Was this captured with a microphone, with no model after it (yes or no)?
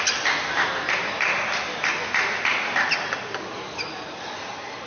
yes